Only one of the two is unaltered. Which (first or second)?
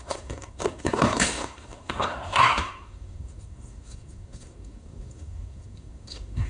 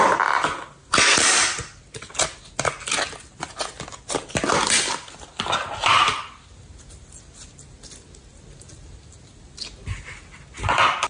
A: second